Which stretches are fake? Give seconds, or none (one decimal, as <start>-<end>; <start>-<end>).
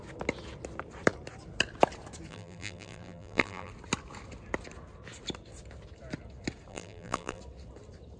2.3-3.7; 6.7-7.4